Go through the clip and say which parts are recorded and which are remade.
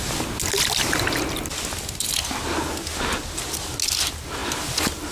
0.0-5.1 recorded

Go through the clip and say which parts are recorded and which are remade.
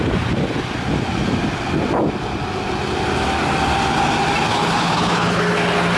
0.0-4.5 recorded; 4.5-5.4 remade; 5.4-6.0 recorded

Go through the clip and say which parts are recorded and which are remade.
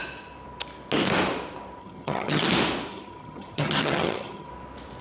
0.0-1.8 recorded; 1.8-2.4 remade; 2.4-2.9 recorded; 2.9-4.5 remade; 4.5-5.0 recorded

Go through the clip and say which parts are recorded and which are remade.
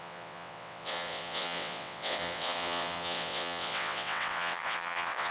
0.0-5.3 remade